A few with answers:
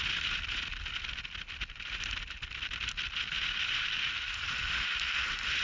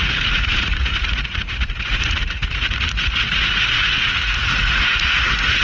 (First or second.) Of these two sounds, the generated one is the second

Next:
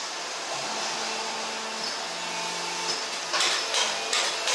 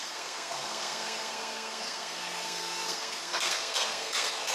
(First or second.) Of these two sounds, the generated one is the second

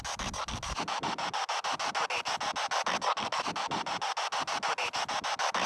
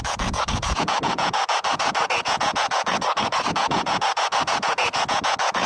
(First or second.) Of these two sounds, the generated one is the second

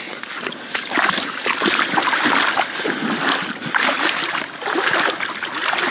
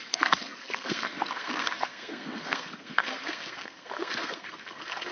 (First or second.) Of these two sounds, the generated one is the second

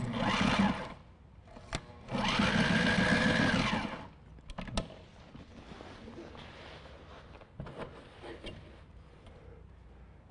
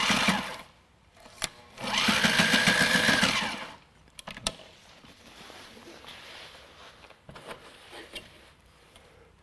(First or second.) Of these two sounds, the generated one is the second